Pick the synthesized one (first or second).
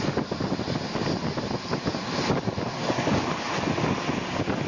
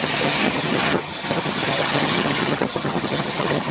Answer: second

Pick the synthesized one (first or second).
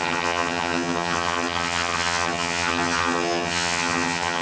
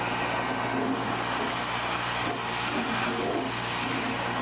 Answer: first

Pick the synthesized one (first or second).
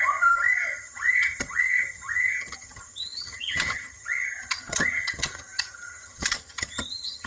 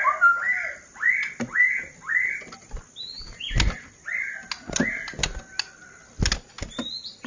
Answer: first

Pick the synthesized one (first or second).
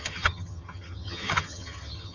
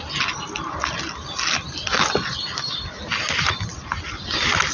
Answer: first